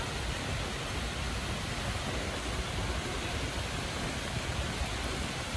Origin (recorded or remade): recorded